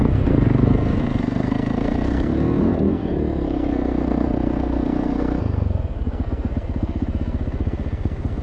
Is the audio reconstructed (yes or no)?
yes